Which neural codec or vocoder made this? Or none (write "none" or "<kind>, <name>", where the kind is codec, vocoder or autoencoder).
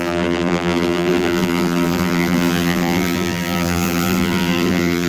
vocoder, BigVGAN v2